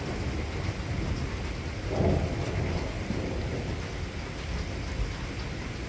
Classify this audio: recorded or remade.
recorded